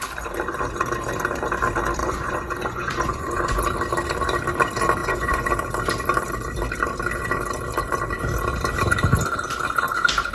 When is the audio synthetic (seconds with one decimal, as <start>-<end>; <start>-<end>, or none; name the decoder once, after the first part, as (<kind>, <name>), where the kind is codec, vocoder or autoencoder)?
2.0-3.6 (vocoder, Vocos); 5.0-5.5

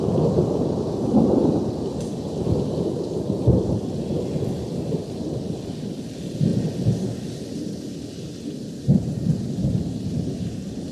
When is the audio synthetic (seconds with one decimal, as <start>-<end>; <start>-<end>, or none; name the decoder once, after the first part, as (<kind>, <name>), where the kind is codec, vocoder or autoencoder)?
none